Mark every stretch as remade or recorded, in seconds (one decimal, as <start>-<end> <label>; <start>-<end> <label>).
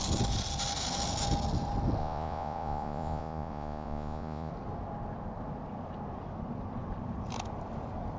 0.0-2.0 recorded; 2.0-4.5 remade; 4.5-8.2 recorded